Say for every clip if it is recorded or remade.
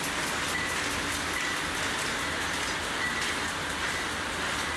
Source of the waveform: recorded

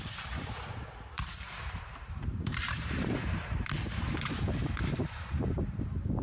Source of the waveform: remade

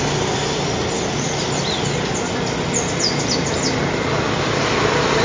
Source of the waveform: recorded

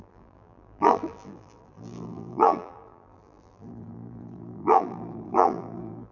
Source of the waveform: remade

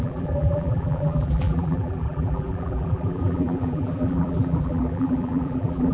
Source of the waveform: remade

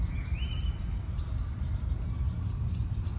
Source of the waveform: recorded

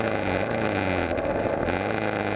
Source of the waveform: recorded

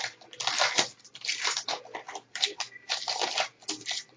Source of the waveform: remade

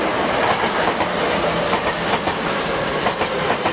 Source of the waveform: remade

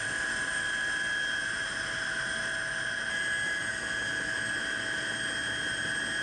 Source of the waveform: recorded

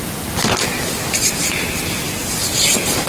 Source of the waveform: recorded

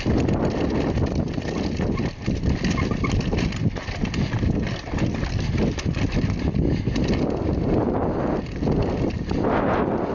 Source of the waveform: recorded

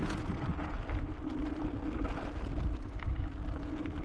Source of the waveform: recorded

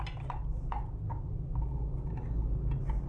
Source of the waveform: recorded